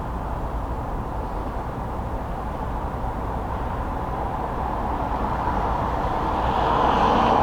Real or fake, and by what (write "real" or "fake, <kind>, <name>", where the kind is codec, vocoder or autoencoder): fake, vocoder, BigVGAN v2